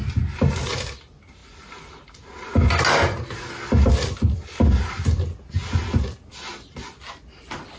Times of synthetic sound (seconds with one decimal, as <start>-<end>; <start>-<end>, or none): none